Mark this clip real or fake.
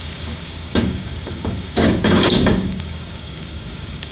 fake